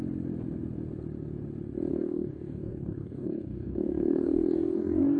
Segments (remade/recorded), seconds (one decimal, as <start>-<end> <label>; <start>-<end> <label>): 0.0-1.9 recorded; 1.9-5.2 remade